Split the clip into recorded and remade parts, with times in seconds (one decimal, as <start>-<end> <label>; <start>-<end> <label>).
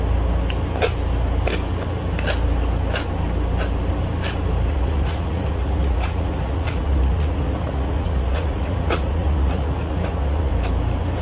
0.0-4.7 recorded; 4.7-10.5 remade; 10.5-11.2 recorded